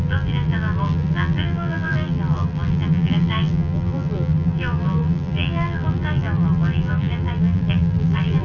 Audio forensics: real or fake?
fake